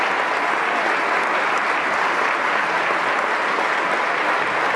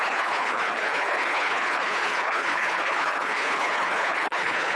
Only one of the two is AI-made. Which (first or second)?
second